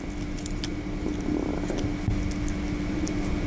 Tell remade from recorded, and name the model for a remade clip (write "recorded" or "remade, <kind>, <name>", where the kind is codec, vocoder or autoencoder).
recorded